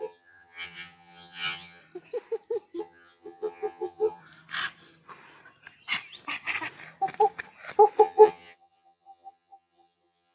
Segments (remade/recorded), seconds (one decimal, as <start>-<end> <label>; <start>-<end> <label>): 0.0-1.8 remade; 1.8-2.8 recorded; 2.8-4.2 remade; 4.2-8.0 recorded; 8.0-10.3 remade